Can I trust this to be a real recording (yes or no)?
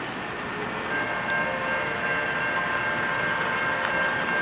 yes